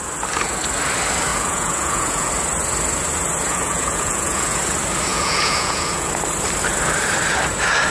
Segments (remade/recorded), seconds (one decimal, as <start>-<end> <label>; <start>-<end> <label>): 0.0-1.3 recorded; 1.3-2.3 remade; 2.3-3.5 recorded; 3.5-4.6 remade; 4.6-5.1 recorded; 5.1-6.1 remade; 6.1-7.9 recorded